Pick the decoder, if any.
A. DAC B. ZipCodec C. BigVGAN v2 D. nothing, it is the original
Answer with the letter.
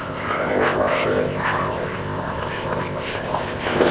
B